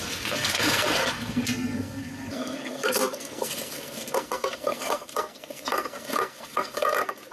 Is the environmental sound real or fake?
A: fake